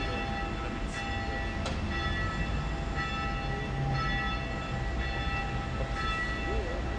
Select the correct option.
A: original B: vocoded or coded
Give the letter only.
A